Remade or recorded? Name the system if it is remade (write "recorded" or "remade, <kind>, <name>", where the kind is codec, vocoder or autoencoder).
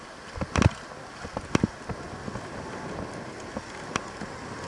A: recorded